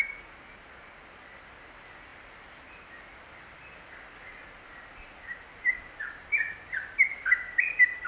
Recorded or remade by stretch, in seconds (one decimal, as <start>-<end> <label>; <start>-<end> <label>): 0.0-8.1 recorded